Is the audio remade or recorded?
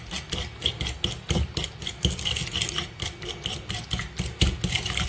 recorded